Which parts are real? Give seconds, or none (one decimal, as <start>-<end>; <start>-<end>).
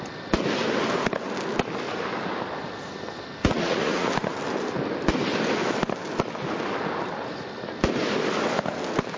0.0-3.4; 4.1-9.2